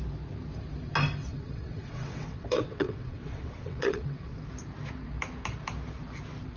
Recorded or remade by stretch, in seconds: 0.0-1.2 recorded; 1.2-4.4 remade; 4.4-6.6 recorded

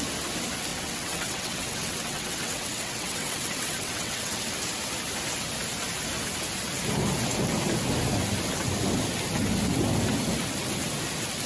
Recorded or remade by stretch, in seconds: 0.0-0.7 recorded; 0.7-4.4 remade; 4.4-11.5 recorded

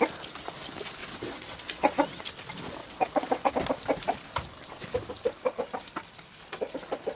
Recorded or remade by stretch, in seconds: 0.0-1.0 recorded; 1.0-2.2 remade; 2.2-2.8 recorded; 2.8-3.5 remade; 3.5-7.2 recorded

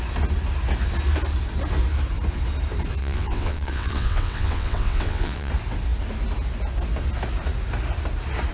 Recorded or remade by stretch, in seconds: 0.0-3.0 recorded; 3.0-5.5 remade; 5.5-8.5 recorded

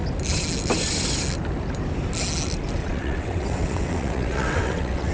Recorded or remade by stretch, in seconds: 0.0-2.8 recorded; 2.8-5.1 remade

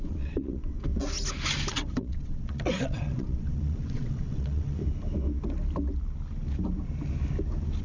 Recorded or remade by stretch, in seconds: 0.0-0.9 remade; 0.9-1.7 recorded; 1.7-4.8 remade; 4.8-7.8 recorded

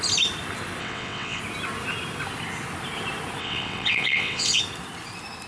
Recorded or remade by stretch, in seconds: 0.0-0.8 recorded; 0.8-1.4 remade; 1.4-3.4 recorded; 3.4-4.6 remade; 4.6-5.5 recorded